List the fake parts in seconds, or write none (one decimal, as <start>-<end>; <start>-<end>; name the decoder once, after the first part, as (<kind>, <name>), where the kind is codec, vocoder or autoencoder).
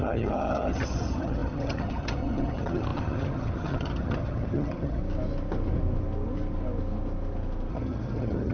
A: 0.0-5.0 (vocoder, HiFi-GAN); 7.7-8.5